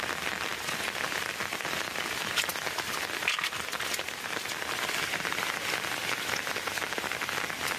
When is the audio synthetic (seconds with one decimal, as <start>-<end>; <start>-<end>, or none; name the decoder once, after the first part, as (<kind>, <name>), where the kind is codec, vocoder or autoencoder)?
none